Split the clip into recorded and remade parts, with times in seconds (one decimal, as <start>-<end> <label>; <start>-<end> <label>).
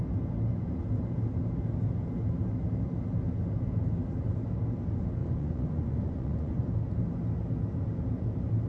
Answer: 0.0-5.2 recorded; 5.2-6.7 remade; 6.7-8.7 recorded